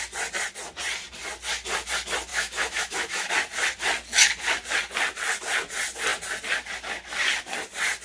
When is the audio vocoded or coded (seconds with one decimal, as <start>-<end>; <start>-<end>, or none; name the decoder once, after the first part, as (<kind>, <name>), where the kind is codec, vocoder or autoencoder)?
2.3-3.3 (autoencoder, DAC-VAE)